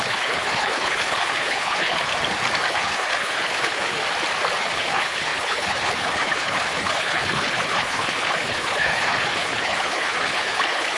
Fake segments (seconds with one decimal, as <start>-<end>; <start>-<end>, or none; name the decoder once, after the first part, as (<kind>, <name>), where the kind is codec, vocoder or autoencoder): 0.0-2.1 (codec, HILCodec); 2.7-4.0; 4.6-11.0